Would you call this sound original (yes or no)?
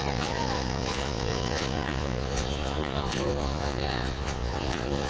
no